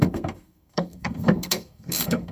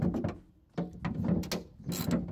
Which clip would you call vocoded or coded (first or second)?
first